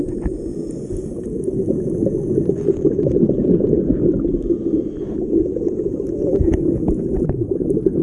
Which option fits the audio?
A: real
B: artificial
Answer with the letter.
B